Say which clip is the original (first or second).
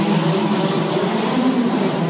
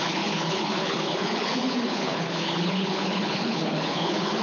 first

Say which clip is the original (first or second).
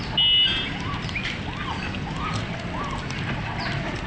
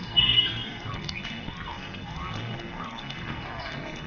first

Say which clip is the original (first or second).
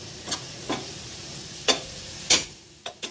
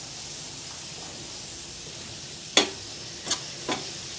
second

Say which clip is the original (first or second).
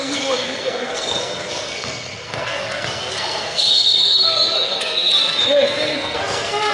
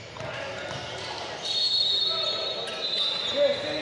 second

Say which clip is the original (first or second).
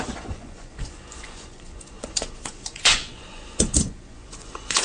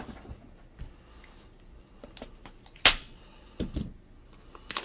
second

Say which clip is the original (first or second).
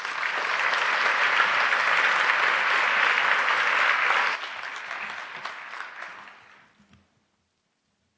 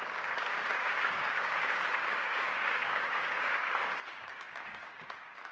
first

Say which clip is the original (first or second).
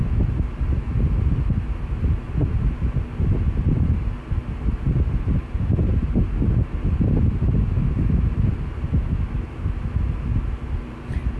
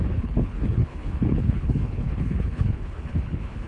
first